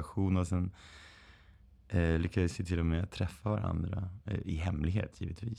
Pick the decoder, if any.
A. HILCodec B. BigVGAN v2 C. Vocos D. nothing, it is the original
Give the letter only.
D